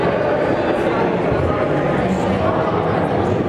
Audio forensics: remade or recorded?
recorded